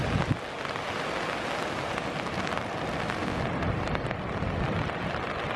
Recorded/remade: recorded